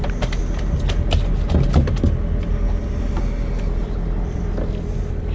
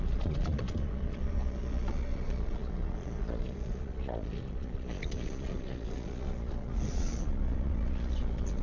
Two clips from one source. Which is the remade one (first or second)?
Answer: second